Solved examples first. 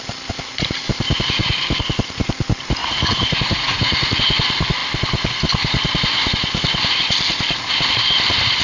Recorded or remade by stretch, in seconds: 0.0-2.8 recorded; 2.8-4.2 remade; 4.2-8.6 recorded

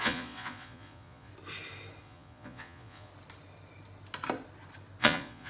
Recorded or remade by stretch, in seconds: 0.0-1.3 remade; 1.3-2.0 recorded; 2.0-3.1 remade; 3.1-5.0 recorded; 5.0-5.5 remade

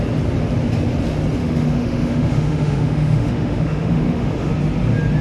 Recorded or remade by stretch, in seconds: 0.0-1.4 recorded; 1.4-4.5 remade; 4.5-5.2 recorded

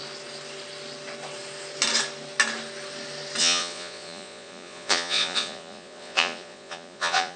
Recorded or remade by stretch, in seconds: 0.0-3.4 recorded; 3.4-7.4 remade

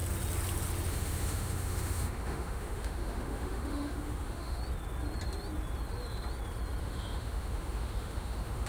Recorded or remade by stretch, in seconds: 0.0-0.9 recorded; 0.9-4.6 remade; 4.6-6.8 recorded; 6.8-8.7 remade

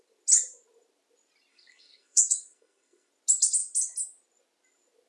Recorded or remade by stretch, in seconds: 0.0-1.5 recorded; 1.5-3.1 remade; 3.1-5.1 recorded

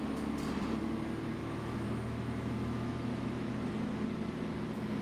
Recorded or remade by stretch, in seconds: 0.0-1.4 recorded; 1.4-3.7 remade; 3.7-5.0 recorded